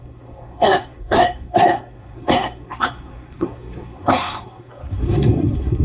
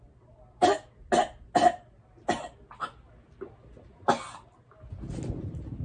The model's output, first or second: first